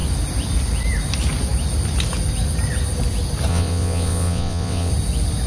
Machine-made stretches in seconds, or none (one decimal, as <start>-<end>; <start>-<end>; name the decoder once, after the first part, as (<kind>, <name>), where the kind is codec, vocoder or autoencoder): 3.5-4.9 (vocoder, WaveNeXt)